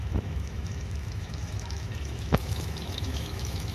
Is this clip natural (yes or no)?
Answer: no